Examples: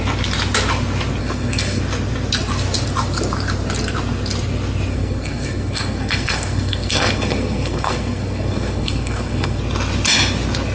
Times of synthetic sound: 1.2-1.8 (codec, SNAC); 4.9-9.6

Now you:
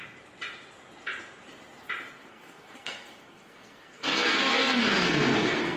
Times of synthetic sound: 2.2-5.8 (codec, SNAC)

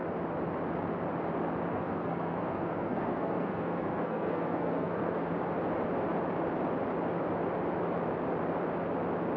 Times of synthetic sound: 1.7-5.3 (codec, SNAC)

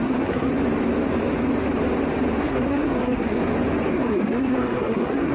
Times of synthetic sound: 0.0-0.5 (codec, SNAC); 2.4-3.4; 3.9-5.3

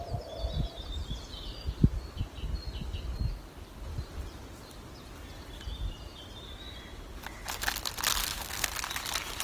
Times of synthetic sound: 8.2-8.7 (codec, SNAC)